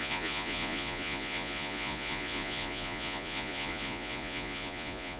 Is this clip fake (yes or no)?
yes